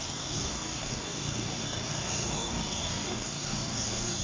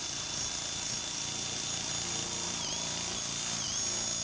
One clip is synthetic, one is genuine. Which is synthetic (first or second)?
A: first